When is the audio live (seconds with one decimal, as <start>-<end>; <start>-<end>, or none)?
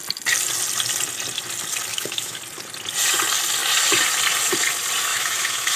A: 0.0-1.9; 2.4-5.1